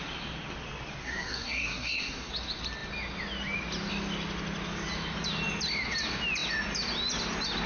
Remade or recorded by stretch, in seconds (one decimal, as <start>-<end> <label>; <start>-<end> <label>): 0.0-1.0 recorded; 1.0-2.3 remade; 2.3-7.7 recorded